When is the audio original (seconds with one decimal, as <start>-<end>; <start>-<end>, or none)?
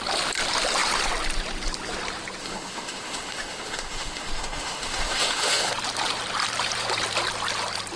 0.0-2.4; 5.7-8.0